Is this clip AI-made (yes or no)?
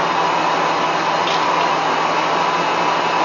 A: no